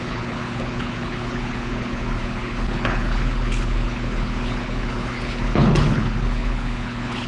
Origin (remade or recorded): remade